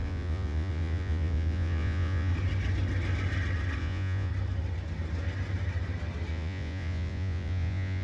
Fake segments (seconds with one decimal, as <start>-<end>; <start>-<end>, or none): 0.0-2.3; 3.8-4.3; 6.3-8.0